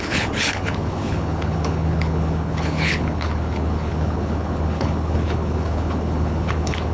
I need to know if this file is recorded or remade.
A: remade